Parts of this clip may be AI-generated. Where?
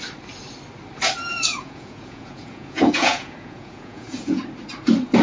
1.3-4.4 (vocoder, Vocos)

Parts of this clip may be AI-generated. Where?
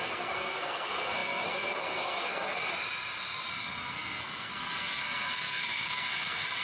0.0-2.7 (codec, SNAC); 3.5-6.6